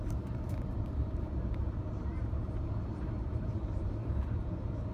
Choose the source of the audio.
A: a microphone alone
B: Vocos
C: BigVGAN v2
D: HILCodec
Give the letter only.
C